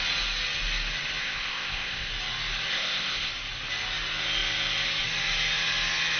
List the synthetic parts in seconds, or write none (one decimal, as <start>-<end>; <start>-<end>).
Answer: 1.2-2.1; 2.7-3.3